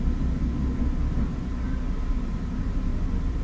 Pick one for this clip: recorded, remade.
recorded